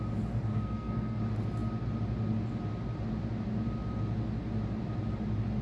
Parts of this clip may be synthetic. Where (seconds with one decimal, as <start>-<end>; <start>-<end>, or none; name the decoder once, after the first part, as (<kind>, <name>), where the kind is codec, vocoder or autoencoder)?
0.5-1.2 (codec, SNAC)